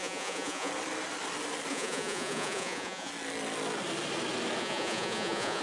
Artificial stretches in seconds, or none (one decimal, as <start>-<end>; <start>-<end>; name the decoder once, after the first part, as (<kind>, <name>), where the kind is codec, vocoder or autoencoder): 0.0-0.7 (vocoder, Vocos); 1.7-3.1; 4.6-5.6